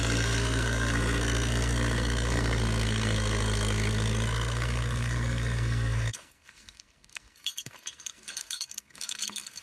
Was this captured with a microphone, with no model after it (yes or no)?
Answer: no